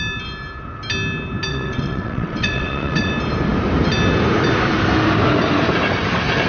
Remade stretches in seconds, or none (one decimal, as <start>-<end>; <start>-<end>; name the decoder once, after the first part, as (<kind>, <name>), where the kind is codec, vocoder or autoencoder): 1.5-3.1 (vocoder, WaveNeXt)